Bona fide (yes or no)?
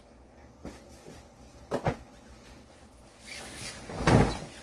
yes